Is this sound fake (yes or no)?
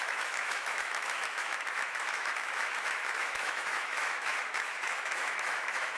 yes